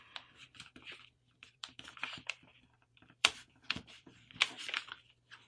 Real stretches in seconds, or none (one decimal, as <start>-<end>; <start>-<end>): none